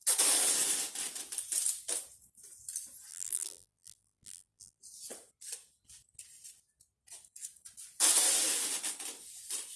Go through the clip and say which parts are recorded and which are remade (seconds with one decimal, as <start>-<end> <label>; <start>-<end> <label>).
0.0-3.1 recorded; 3.1-4.8 remade; 4.8-9.8 recorded